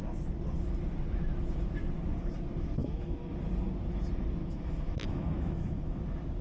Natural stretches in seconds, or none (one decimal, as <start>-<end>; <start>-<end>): 0.0-2.8; 3.3-4.4; 6.0-6.4